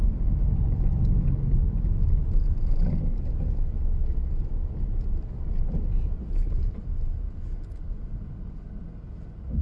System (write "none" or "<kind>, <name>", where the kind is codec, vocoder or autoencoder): none